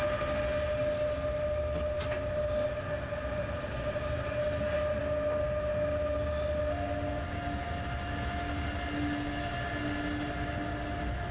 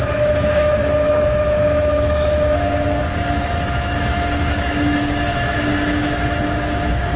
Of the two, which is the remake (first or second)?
second